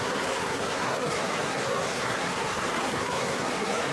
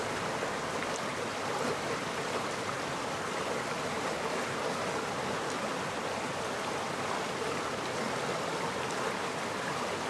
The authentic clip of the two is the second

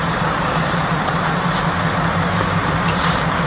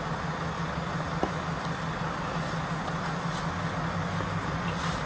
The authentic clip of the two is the second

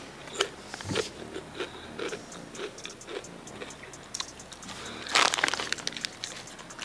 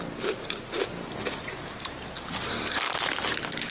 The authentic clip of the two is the first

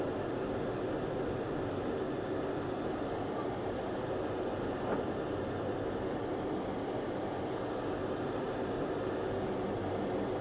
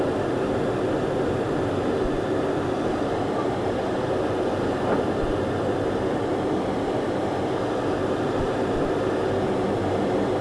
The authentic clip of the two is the first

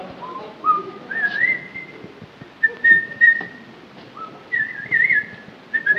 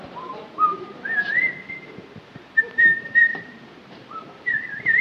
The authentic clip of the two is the first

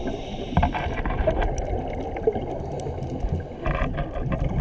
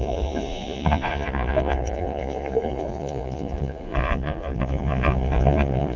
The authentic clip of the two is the first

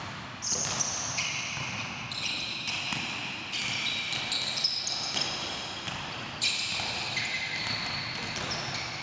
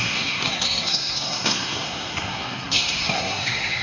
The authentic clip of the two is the first